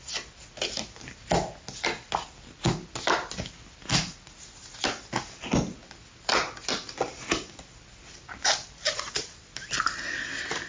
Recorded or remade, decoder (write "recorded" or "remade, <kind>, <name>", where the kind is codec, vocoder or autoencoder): recorded